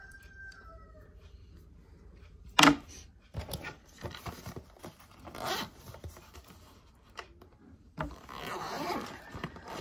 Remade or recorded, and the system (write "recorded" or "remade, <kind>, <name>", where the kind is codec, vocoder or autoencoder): remade, vocoder, BigVGAN v2